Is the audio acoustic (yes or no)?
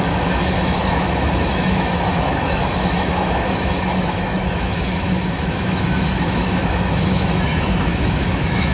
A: no